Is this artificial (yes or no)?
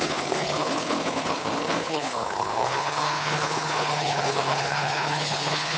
yes